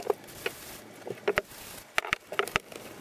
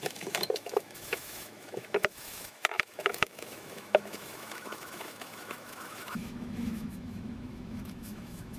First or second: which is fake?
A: second